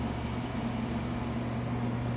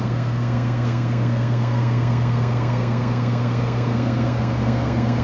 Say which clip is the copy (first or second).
second